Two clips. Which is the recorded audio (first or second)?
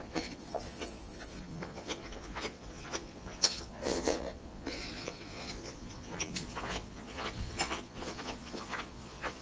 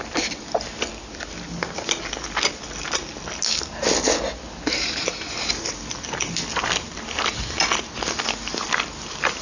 second